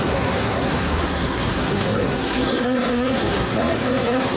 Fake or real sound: fake